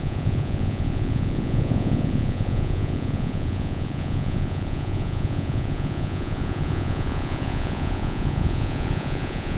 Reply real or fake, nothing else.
fake